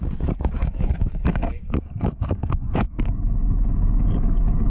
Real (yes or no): no